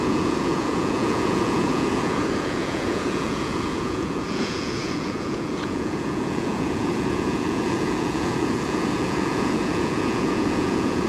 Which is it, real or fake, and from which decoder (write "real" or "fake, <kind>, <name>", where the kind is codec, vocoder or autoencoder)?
fake, vocoder, Vocos